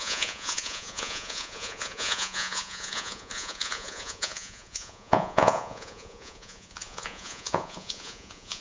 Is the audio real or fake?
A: fake